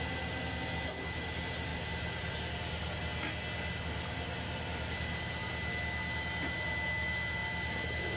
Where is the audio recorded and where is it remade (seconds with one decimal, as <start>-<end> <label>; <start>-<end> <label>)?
0.0-8.2 recorded

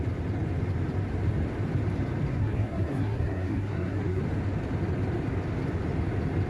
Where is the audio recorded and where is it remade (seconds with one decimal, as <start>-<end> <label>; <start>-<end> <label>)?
0.0-2.3 recorded; 2.3-4.2 remade; 4.2-6.5 recorded

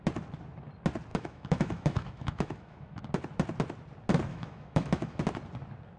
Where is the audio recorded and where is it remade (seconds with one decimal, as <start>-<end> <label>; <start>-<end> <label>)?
0.0-1.1 recorded; 1.1-3.0 remade; 3.0-4.3 recorded; 4.3-5.2 remade; 5.2-6.0 recorded

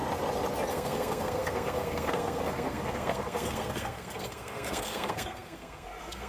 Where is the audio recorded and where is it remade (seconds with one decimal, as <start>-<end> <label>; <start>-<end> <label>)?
0.0-0.7 recorded; 0.7-6.3 remade

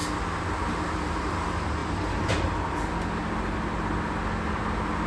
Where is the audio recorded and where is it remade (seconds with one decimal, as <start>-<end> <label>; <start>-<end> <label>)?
0.0-5.1 recorded

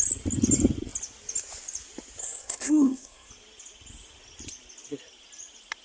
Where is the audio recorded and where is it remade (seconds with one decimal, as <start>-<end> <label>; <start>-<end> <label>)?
0.0-2.2 recorded; 2.2-3.3 remade; 3.3-5.8 recorded

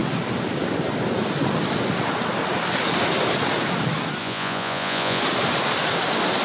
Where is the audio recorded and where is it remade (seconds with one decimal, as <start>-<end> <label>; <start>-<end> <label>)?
0.0-4.2 recorded; 4.2-5.2 remade; 5.2-6.4 recorded

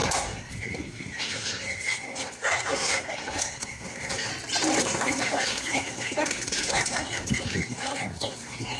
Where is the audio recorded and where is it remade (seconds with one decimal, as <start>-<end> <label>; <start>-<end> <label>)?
0.0-4.3 remade; 4.3-4.8 recorded; 4.8-8.8 remade